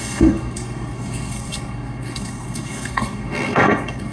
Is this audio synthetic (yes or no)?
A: yes